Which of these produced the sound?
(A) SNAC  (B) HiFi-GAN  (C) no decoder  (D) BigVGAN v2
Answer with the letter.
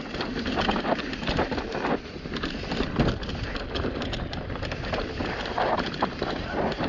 C